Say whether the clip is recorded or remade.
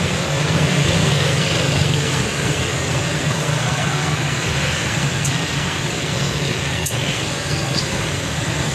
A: remade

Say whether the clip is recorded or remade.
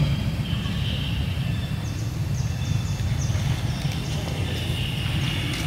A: recorded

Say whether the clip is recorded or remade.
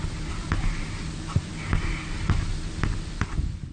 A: recorded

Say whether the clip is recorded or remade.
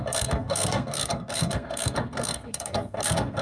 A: remade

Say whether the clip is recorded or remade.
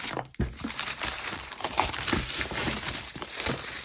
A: remade